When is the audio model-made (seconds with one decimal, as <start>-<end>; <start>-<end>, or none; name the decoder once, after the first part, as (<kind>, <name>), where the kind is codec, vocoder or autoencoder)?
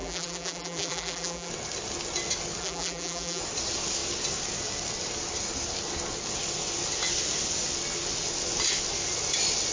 0.0-1.5 (vocoder, BigVGAN v2); 2.6-3.4